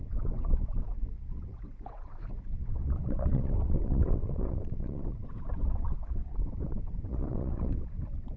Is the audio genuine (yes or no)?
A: no